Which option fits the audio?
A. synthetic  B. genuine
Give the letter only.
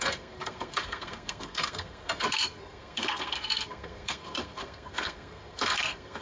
A